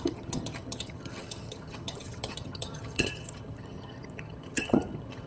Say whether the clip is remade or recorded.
remade